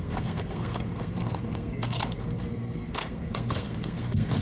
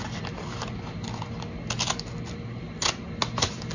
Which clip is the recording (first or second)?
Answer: second